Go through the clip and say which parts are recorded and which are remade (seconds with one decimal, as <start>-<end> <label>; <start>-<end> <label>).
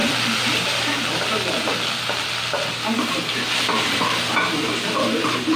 0.0-5.6 recorded